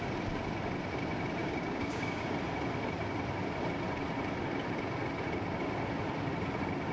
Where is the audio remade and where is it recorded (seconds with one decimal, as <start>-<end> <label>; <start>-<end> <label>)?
0.0-1.4 recorded; 1.4-2.3 remade; 2.3-6.9 recorded